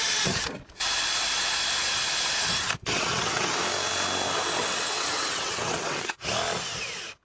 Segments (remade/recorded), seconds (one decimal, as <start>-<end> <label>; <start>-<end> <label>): 0.0-2.8 recorded; 2.8-3.4 remade; 3.4-4.6 recorded; 4.6-6.2 remade; 6.2-7.2 recorded